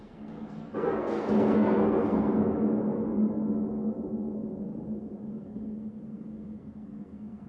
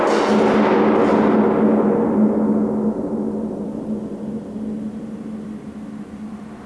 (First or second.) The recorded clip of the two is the second